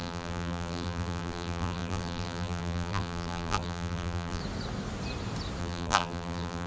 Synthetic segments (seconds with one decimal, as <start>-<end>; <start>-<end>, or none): 0.0-4.4; 5.6-6.7